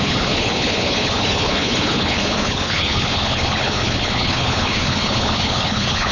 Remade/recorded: remade